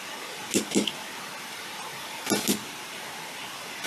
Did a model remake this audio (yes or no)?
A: no